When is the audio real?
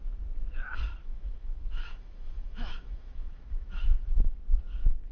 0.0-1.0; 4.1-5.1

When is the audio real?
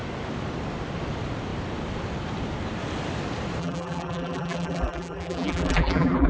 0.0-3.6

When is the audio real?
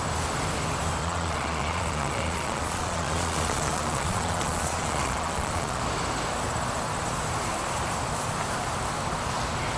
0.0-1.0; 5.8-9.8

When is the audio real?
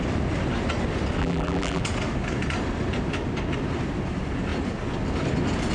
0.0-1.2; 1.8-5.7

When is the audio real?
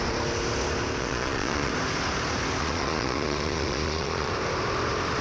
0.0-1.0; 1.7-2.6; 4.3-5.2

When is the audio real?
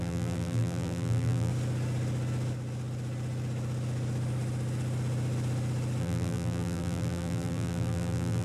1.5-6.0